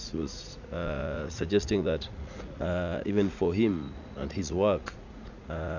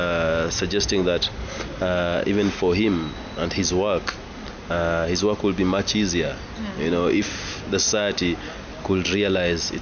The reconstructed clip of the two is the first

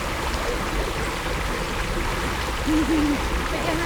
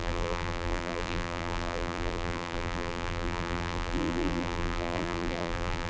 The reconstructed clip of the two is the second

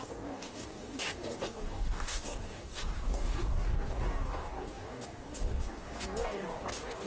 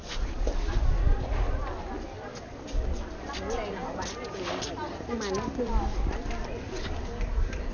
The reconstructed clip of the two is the first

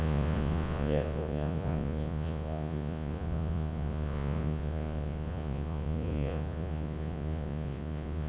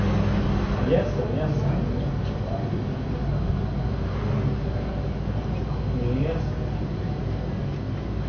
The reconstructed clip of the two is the first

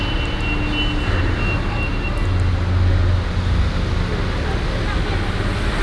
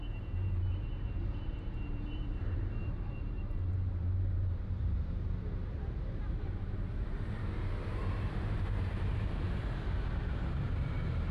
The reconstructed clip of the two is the second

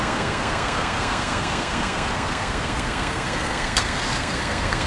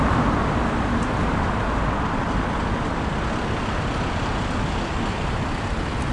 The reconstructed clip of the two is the first